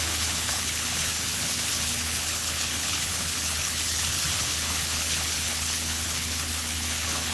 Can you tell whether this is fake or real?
fake